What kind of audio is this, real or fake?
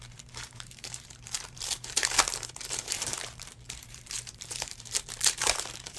fake